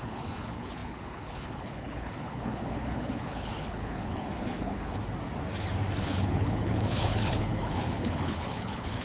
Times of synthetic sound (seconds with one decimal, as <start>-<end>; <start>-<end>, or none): 0.0-5.0; 6.0-9.0